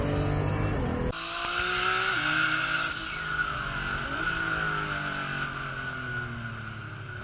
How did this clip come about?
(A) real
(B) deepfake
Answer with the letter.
A